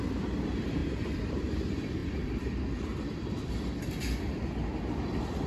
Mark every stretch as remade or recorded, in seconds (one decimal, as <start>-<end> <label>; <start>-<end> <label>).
0.0-0.8 recorded; 0.8-1.5 remade; 1.5-2.0 recorded; 2.0-4.2 remade; 4.2-5.5 recorded

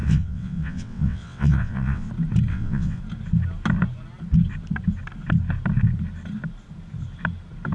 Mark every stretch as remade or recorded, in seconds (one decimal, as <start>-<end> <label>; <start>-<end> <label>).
0.0-2.1 remade; 2.1-2.5 recorded; 2.5-3.0 remade; 3.0-7.7 recorded

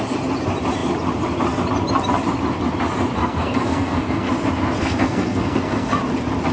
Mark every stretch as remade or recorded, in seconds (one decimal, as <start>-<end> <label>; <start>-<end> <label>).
0.0-3.2 recorded; 3.2-4.3 remade; 4.3-4.8 recorded; 4.8-6.0 remade; 6.0-6.5 recorded

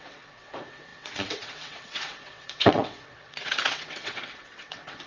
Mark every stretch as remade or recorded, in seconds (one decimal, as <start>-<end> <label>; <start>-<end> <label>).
0.0-5.1 remade

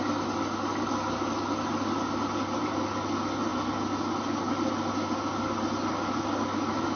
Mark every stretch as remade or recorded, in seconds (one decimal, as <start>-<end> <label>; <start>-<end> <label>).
0.0-7.0 recorded

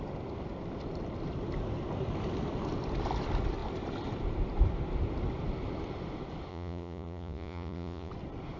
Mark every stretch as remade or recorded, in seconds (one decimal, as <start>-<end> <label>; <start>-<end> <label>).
0.0-6.5 recorded; 6.5-8.1 remade; 8.1-8.6 recorded